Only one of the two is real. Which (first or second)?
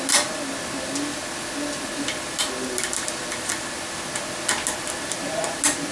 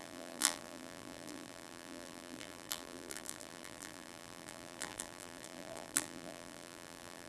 first